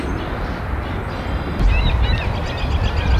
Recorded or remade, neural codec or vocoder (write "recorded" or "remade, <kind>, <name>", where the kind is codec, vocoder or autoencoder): recorded